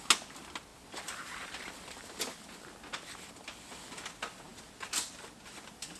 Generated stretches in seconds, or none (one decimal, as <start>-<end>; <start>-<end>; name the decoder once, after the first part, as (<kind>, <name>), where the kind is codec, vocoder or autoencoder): none